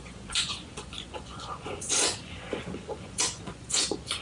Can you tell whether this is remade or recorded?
remade